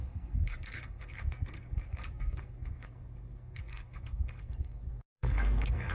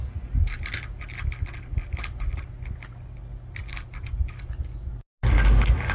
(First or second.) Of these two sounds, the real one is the second